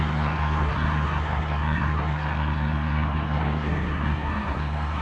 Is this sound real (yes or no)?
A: no